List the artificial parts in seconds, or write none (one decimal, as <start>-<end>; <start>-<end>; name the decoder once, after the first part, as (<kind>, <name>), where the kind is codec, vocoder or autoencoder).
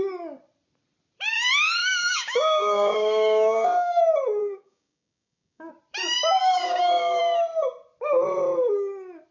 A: 1.8-4.0 (codec, DAC); 4.4-5.7; 6.4-7.2